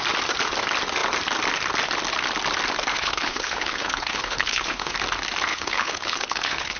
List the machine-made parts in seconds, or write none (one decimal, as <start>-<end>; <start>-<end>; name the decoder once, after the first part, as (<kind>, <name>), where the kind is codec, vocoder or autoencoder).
2.9-4.9 (codec, HILCodec); 5.5-6.8